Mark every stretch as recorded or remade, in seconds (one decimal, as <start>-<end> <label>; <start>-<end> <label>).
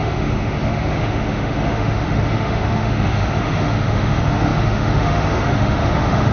0.0-6.3 remade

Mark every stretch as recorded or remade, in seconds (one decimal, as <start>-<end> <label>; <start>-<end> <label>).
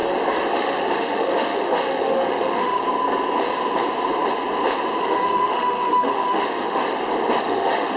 0.0-0.5 recorded; 0.5-2.8 remade; 2.8-5.0 recorded; 5.0-6.8 remade; 6.8-7.4 recorded; 7.4-8.0 remade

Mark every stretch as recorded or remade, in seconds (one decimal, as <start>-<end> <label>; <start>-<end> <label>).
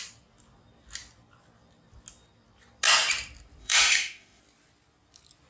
0.0-3.6 recorded; 3.6-4.4 remade; 4.4-5.5 recorded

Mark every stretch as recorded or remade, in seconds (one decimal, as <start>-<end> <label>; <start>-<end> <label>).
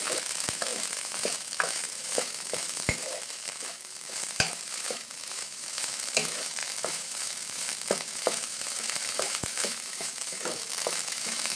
0.0-11.6 remade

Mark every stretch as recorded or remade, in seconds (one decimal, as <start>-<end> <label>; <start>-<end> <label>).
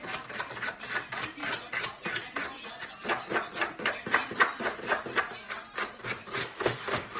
0.0-6.4 recorded; 6.4-7.2 remade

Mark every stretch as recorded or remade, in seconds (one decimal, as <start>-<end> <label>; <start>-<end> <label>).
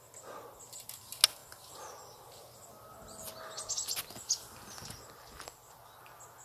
0.0-6.4 recorded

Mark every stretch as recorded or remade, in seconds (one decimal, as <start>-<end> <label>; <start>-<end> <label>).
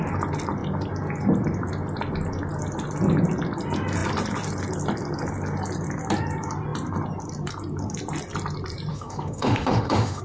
0.0-8.9 recorded; 8.9-10.2 remade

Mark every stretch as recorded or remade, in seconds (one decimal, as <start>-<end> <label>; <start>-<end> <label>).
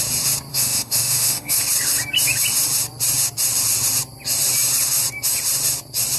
0.0-0.5 recorded; 0.5-1.6 remade; 1.6-6.2 recorded